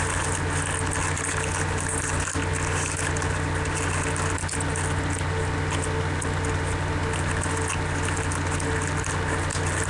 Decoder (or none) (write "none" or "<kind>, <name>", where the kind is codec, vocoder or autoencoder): none